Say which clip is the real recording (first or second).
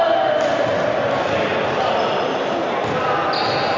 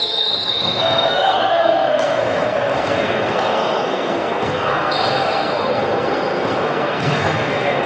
first